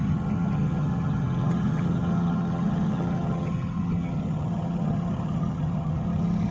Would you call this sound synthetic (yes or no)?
yes